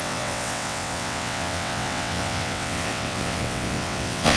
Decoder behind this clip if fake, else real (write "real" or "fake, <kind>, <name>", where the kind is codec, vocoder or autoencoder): fake, vocoder, WaveNeXt